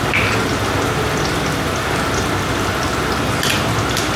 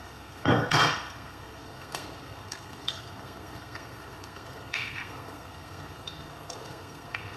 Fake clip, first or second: second